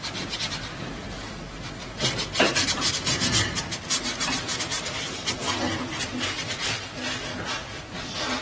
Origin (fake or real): real